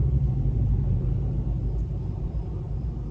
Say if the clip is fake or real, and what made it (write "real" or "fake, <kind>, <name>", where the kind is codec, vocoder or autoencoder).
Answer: fake, vocoder, BigVGAN v2